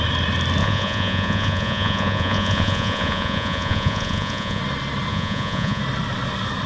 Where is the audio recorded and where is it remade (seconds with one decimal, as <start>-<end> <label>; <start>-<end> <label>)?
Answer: 0.0-0.6 recorded; 0.6-4.6 remade; 4.6-5.1 recorded; 5.1-5.8 remade; 5.8-6.7 recorded